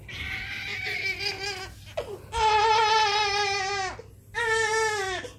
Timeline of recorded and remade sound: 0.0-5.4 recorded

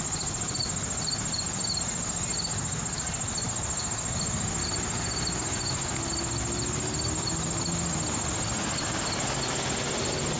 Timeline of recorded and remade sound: 0.0-10.4 recorded

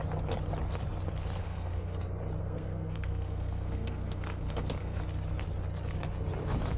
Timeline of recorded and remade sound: 0.0-1.4 recorded; 1.4-2.0 remade; 2.0-2.4 recorded; 2.4-5.0 remade; 5.0-6.8 recorded

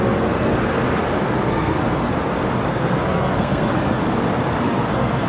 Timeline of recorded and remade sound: 0.0-0.5 remade; 0.5-1.5 recorded; 1.5-2.1 remade; 2.1-2.7 recorded; 2.7-4.0 remade; 4.0-4.6 recorded; 4.6-5.3 remade

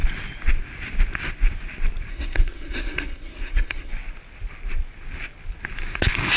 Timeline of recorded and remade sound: 0.0-2.1 recorded; 2.1-3.9 remade; 3.9-6.4 recorded

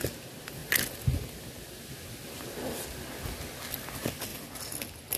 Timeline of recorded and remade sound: 0.0-5.2 recorded

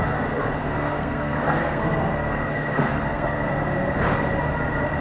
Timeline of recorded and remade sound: 0.0-0.6 recorded; 0.6-3.5 remade; 3.5-5.0 recorded